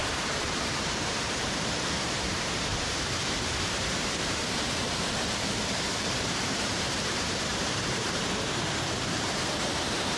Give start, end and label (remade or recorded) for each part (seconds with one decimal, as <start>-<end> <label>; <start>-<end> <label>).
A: 0.0-2.7 remade; 2.7-4.0 recorded; 4.0-10.2 remade